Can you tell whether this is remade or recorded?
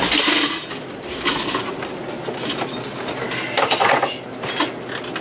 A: recorded